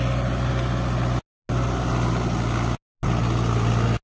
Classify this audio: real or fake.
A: real